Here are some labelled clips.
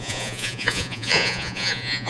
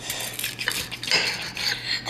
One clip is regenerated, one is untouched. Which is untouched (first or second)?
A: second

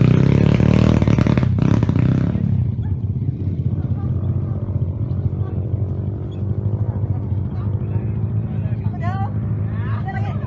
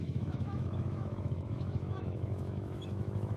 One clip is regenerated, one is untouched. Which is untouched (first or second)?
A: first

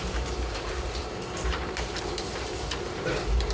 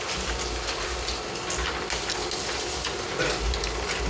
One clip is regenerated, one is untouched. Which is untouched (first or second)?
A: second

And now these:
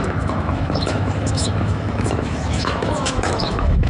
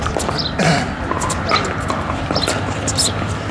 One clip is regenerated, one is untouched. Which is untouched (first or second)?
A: second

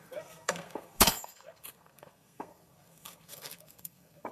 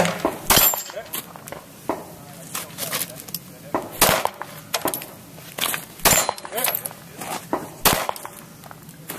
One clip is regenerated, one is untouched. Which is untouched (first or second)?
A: second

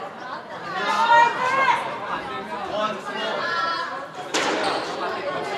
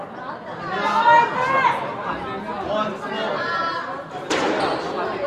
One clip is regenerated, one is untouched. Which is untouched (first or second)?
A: second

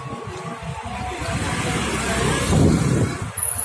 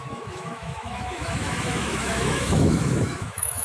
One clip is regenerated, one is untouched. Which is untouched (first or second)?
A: first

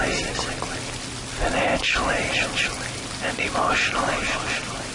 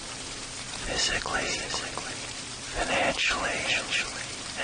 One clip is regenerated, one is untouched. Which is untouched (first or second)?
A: first